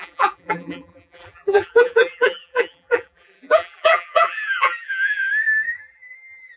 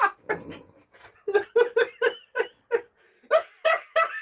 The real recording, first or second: second